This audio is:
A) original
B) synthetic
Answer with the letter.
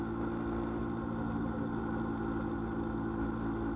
A